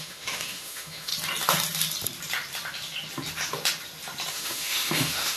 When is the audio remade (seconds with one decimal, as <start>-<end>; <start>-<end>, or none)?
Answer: 0.0-1.1; 4.3-5.4